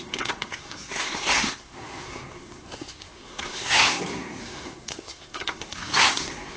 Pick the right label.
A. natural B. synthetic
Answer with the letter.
B